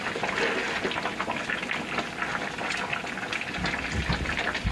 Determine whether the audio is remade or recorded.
recorded